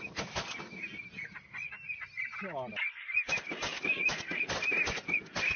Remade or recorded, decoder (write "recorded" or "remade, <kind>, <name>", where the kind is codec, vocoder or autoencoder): recorded